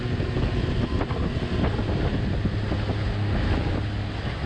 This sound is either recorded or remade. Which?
recorded